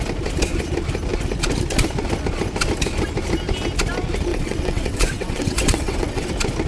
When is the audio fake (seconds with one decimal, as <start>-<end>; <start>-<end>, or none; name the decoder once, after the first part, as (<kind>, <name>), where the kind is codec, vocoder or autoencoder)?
4.3-6.3 (vocoder, WaveNeXt)